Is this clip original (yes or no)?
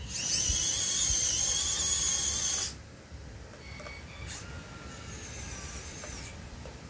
yes